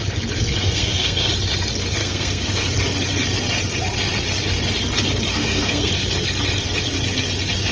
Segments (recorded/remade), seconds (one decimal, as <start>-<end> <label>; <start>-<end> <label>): 0.0-0.6 recorded; 0.6-1.3 remade; 1.3-2.0 recorded; 2.0-2.7 remade; 2.7-5.3 recorded; 5.3-5.9 remade; 5.9-7.7 recorded